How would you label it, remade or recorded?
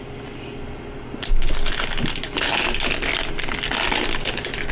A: recorded